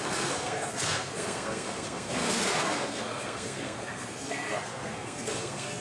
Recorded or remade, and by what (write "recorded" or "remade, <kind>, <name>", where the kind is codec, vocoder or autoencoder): remade, codec, SNAC